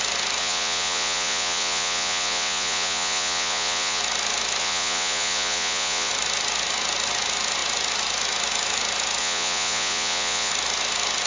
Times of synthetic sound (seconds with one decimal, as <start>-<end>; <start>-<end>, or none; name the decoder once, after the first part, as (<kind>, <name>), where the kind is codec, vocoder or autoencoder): 0.4-4.0 (vocoder, Vocos); 4.6-6.1; 9.2-10.5